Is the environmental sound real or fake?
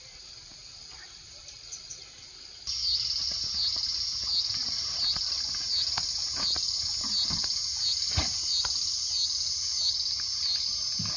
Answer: real